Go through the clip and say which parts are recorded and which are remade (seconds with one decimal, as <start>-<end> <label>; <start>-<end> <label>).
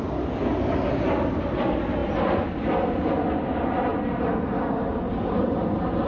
0.0-6.1 recorded